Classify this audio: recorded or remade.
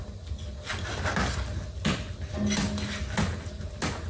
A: recorded